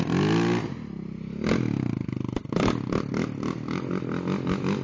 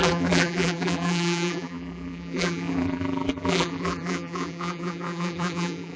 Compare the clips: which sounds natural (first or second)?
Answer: first